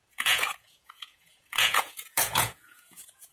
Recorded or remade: remade